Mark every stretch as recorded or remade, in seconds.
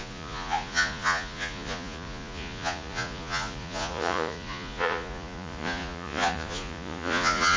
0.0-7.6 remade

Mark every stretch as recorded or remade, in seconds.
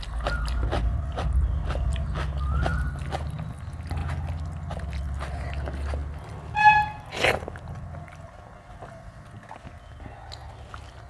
0.0-11.1 recorded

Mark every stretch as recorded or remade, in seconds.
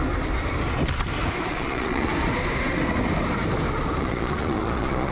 0.0-1.5 recorded; 1.5-2.1 remade; 2.1-4.0 recorded; 4.0-5.1 remade